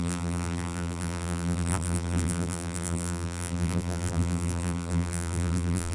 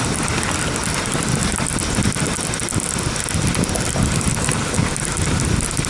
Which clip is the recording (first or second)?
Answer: second